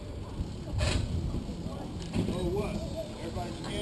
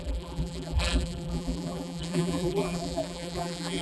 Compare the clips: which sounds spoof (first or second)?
second